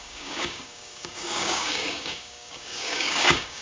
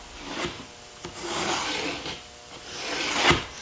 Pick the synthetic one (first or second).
first